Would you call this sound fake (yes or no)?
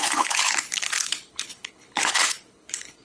yes